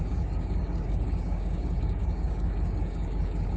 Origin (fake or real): fake